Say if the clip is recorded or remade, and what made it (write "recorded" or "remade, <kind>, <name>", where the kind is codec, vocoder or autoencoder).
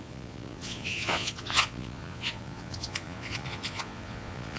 remade, vocoder, Vocos